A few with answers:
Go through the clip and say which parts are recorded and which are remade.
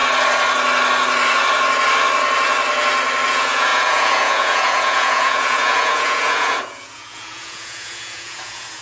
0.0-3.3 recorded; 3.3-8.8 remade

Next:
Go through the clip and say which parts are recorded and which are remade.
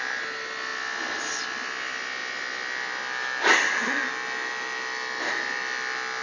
0.0-6.2 recorded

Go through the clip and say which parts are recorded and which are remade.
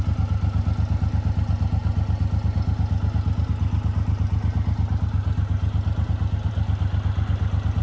0.0-7.8 recorded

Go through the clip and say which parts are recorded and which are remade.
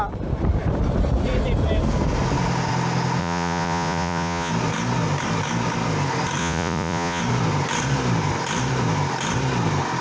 0.0-3.2 recorded; 3.2-4.5 remade; 4.5-6.4 recorded; 6.4-7.2 remade; 7.2-10.0 recorded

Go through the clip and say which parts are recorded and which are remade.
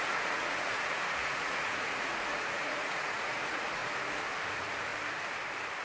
0.0-3.8 remade; 3.8-4.5 recorded; 4.5-4.9 remade; 4.9-5.8 recorded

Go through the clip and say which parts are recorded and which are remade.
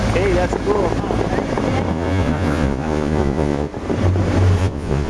0.0-1.9 recorded; 1.9-3.7 remade; 3.7-4.6 recorded; 4.6-5.1 remade